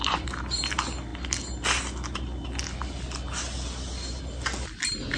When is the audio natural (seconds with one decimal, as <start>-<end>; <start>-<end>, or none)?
0.0-5.2